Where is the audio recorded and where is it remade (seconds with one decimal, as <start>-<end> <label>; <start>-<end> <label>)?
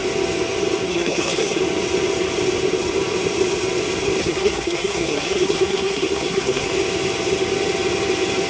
0.0-0.9 recorded; 0.9-1.6 remade; 1.6-4.2 recorded; 4.2-6.7 remade; 6.7-8.5 recorded